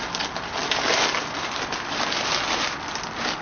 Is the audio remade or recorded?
recorded